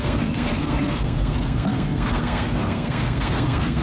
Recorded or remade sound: remade